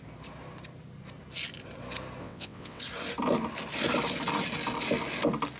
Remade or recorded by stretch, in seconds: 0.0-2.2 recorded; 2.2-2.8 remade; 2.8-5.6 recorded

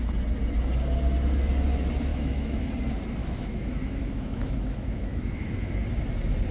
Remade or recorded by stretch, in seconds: 0.0-2.1 recorded; 2.1-2.7 remade; 2.7-3.2 recorded; 3.2-5.7 remade; 5.7-6.5 recorded

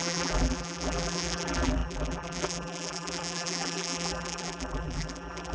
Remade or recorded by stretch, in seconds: 0.0-5.5 remade

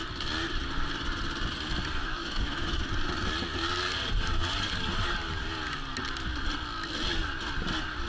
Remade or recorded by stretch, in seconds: 0.0-2.0 recorded; 2.0-2.9 remade; 2.9-8.1 recorded